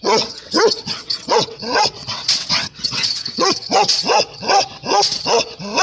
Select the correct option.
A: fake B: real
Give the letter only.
A